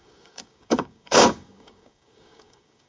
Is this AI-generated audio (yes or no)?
yes